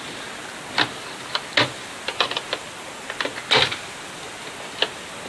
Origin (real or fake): real